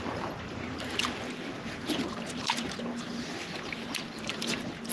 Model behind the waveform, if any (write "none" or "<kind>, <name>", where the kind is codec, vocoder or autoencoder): none